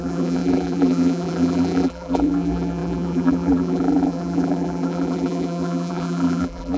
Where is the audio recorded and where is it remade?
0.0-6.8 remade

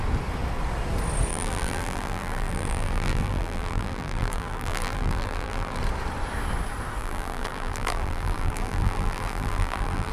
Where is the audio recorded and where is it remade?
0.0-1.3 recorded; 1.3-5.8 remade; 5.8-7.0 recorded; 7.0-10.1 remade

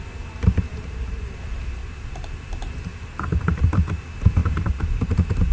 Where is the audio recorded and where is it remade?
0.0-0.7 recorded; 0.7-1.4 remade; 1.4-1.8 recorded; 1.8-2.4 remade; 2.4-2.9 recorded; 2.9-4.0 remade; 4.0-4.4 recorded; 4.4-5.1 remade; 5.1-5.5 recorded

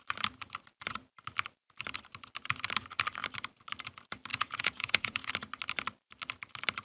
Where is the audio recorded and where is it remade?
0.0-4.3 recorded; 4.3-5.3 remade; 5.3-6.8 recorded